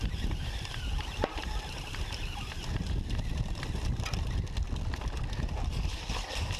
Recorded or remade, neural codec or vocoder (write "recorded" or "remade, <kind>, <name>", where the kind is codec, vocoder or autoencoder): recorded